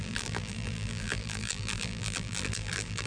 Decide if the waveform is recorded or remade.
remade